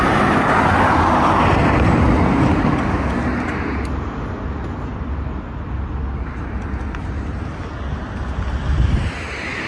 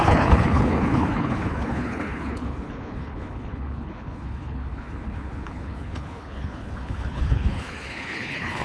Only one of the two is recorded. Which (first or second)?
first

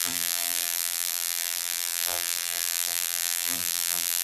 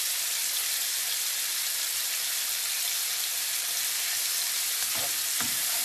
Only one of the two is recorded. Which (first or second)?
second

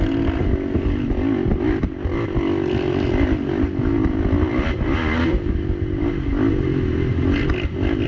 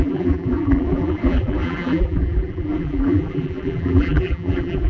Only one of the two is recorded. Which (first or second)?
first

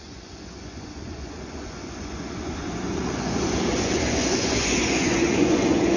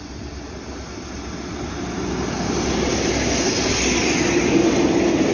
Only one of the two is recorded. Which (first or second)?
second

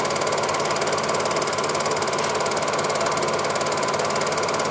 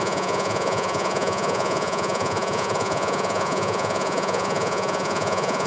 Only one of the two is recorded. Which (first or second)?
first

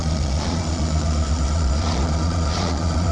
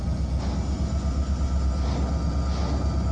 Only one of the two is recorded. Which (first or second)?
second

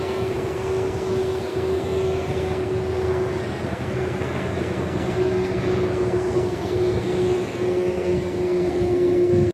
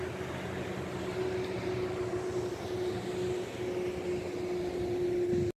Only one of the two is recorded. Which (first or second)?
second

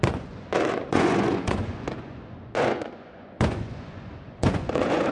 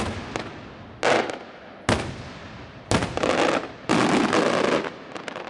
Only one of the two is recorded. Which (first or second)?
second